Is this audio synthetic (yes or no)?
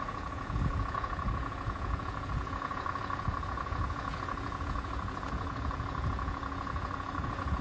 yes